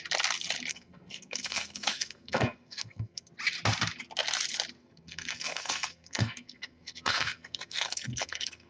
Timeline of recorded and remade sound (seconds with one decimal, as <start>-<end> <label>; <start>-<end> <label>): 0.0-0.7 recorded; 0.7-3.3 remade; 3.3-4.8 recorded; 4.8-8.7 remade